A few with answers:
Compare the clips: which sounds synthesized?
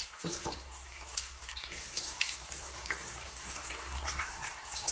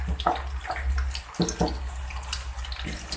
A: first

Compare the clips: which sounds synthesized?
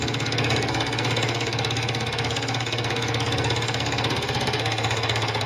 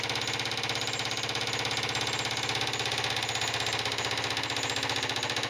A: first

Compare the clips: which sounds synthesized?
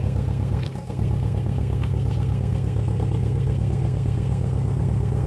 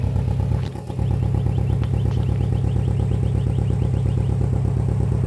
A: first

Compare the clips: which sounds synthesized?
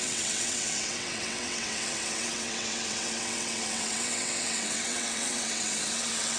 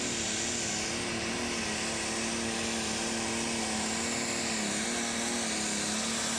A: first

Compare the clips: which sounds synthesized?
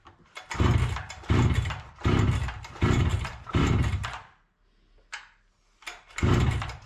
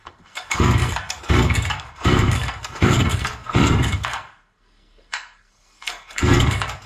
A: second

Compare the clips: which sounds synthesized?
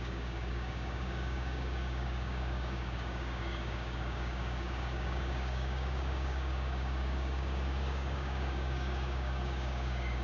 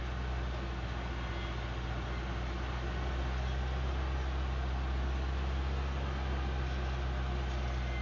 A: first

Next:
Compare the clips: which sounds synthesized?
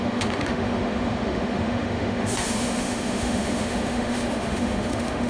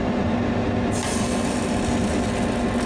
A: first